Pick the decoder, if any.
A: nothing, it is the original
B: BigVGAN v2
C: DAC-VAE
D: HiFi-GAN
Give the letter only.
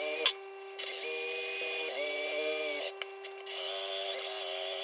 A